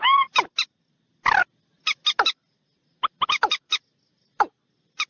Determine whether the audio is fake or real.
real